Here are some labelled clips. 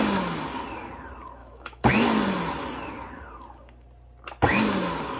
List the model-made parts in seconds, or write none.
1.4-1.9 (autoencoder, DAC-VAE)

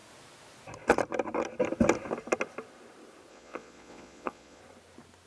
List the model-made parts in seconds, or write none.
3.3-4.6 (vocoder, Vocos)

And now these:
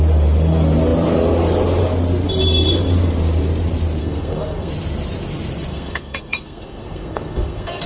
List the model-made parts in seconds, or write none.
4.0-4.7 (codec, SNAC); 5.7-7.9

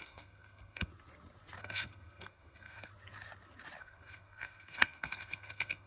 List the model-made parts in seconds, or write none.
0.0-0.9 (codec, SNAC); 1.6-2.9; 3.8-5.9

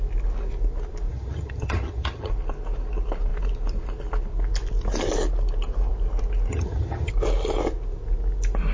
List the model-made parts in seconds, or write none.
1.1-2.3 (vocoder, HiFi-GAN); 6.5-7.1

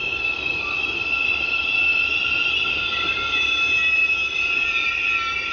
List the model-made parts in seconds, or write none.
4.0-4.8 (vocoder, BigVGAN v2)